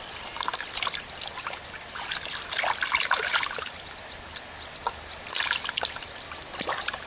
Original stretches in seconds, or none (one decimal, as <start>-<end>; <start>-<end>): 0.0-7.1